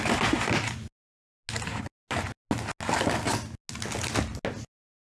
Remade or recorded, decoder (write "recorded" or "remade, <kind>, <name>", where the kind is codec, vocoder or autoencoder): recorded